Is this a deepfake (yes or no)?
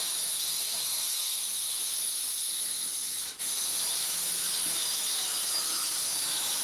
yes